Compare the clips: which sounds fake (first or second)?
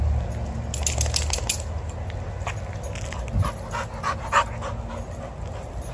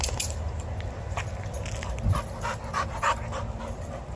second